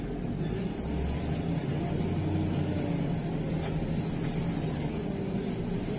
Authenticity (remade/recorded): recorded